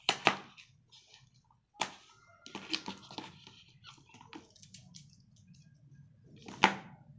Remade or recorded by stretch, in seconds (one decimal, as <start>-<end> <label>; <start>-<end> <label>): 0.0-7.2 recorded